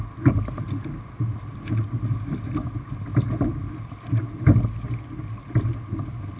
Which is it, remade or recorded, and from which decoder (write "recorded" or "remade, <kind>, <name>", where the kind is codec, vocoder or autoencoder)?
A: recorded